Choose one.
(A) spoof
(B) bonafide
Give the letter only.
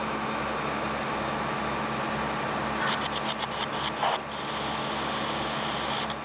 B